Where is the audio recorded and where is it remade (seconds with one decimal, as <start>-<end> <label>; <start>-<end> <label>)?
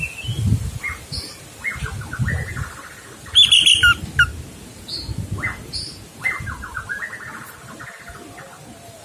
0.0-9.0 recorded